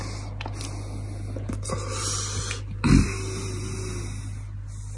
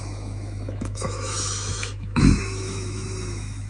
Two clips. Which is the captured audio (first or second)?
first